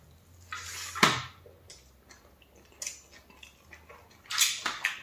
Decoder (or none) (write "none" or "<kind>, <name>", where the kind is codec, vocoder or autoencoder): none